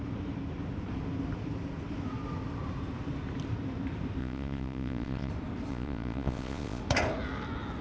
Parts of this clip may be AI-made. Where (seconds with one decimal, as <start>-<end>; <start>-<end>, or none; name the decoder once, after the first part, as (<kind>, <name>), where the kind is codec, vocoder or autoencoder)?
4.2-5.3 (vocoder, Vocos); 5.7-6.8